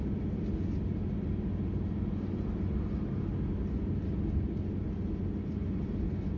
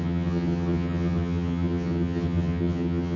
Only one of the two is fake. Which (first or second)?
second